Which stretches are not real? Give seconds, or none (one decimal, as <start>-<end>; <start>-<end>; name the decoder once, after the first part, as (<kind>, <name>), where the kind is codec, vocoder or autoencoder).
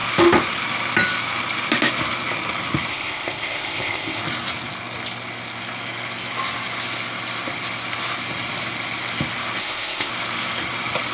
2.9-4.2 (codec, ZipCodec); 9.6-10.1